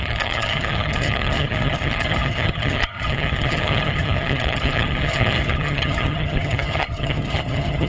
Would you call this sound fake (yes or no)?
yes